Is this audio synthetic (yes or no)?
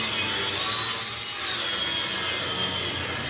no